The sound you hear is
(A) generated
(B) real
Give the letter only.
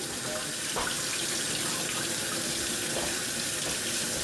B